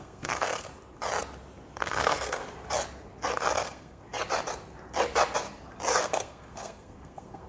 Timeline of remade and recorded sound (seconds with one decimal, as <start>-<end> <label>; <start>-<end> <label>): 0.0-0.7 remade; 0.7-1.8 recorded; 1.8-2.4 remade; 2.4-3.6 recorded; 3.6-4.0 remade; 4.0-6.0 recorded; 6.0-7.5 remade